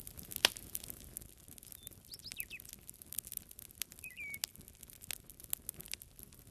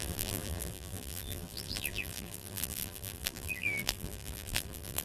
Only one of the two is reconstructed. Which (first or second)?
second